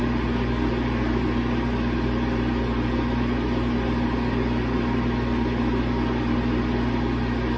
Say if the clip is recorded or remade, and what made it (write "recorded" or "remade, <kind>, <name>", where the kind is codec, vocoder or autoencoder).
recorded